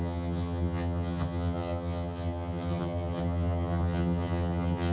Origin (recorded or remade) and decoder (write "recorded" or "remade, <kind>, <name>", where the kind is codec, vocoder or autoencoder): remade, vocoder, HiFi-GAN